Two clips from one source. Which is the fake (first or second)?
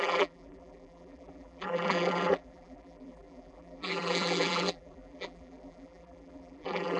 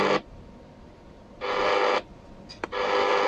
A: first